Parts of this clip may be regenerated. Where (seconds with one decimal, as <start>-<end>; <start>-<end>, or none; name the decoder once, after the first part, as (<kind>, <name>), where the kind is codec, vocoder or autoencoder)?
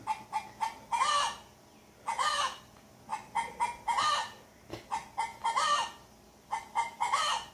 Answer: 5.3-7.5 (vocoder, BigVGAN v2)